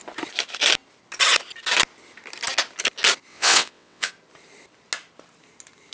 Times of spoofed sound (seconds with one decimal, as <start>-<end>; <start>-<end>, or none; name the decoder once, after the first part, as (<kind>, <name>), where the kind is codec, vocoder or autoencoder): 3.3-4.1 (vocoder, WaveNeXt)